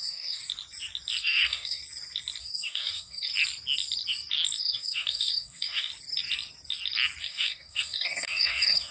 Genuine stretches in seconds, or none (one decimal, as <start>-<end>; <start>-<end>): 0.4-1.2; 1.8-2.4; 3.3-4.6; 5.9-7.2